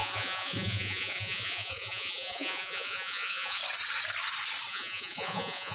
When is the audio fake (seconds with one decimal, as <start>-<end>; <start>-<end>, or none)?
0.0-3.6; 4.7-5.7